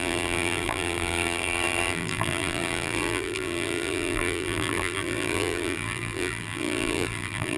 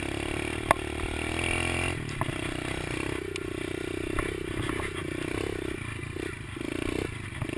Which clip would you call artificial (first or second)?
first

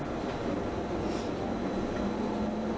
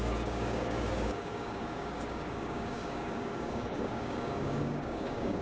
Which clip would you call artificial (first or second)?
second